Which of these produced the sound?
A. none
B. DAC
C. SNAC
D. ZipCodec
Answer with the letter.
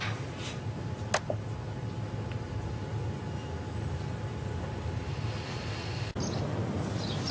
A